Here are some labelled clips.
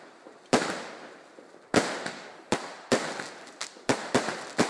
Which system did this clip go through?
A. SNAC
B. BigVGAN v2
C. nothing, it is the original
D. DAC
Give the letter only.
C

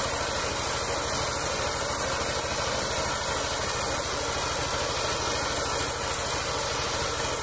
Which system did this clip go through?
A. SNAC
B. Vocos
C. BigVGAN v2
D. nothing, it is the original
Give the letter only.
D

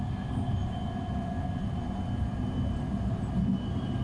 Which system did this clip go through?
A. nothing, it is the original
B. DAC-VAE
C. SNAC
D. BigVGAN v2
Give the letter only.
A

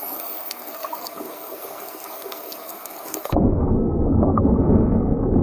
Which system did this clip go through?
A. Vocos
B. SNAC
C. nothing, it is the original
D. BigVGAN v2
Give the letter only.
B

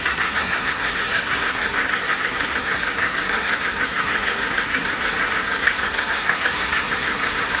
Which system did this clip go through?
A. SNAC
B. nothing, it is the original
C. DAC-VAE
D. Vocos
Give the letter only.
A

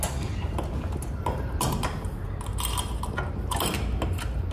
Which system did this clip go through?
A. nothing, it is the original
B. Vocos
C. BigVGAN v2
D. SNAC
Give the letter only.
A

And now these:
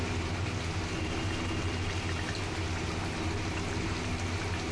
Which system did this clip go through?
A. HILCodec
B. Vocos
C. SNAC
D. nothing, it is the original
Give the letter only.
D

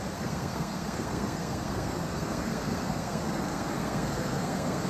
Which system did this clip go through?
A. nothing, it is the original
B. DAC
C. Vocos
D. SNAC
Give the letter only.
D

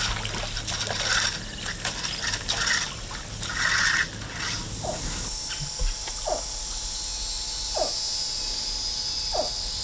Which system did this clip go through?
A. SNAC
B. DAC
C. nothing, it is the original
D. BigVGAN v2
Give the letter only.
C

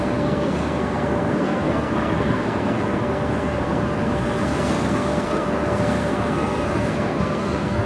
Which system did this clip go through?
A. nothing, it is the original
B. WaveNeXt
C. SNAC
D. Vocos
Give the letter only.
C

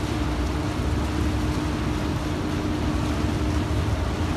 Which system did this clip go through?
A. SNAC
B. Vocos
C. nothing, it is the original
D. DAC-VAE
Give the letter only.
C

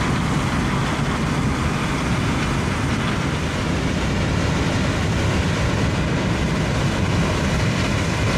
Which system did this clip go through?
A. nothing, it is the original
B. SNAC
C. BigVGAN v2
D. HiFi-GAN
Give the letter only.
A